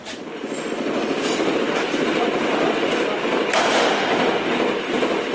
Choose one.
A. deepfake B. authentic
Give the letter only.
B